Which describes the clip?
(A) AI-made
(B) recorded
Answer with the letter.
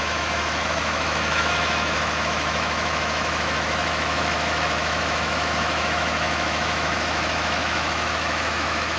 A